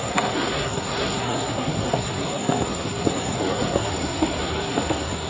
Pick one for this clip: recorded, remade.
remade